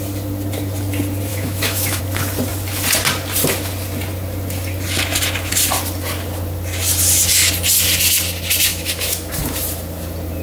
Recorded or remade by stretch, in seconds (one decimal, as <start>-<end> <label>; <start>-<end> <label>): 0.0-1.3 recorded; 1.3-2.0 remade; 2.0-8.7 recorded; 8.7-9.3 remade; 9.3-10.4 recorded